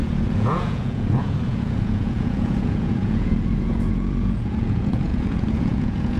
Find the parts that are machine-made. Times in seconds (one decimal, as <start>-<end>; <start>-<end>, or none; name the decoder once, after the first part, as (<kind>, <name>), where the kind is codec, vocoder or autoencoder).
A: 0.0-6.2 (vocoder, Vocos)